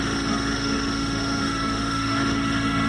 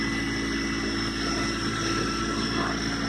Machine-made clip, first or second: first